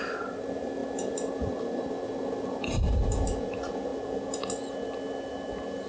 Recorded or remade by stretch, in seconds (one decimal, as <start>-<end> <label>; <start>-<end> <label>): 0.0-5.9 recorded